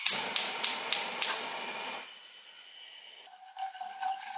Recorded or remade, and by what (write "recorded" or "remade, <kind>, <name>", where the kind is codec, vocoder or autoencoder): recorded